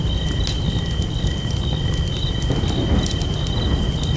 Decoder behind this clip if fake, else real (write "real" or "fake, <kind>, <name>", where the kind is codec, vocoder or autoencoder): real